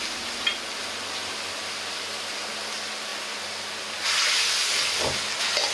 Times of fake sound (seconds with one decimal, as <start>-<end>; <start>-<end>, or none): none